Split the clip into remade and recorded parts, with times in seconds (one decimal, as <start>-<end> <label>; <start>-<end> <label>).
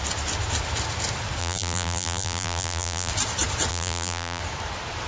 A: 0.0-1.4 recorded; 1.4-3.1 remade; 3.1-3.7 recorded; 3.7-4.4 remade; 4.4-5.1 recorded